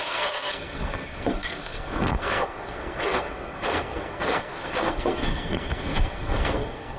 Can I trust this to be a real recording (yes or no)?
no